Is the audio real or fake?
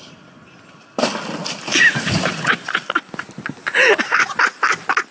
real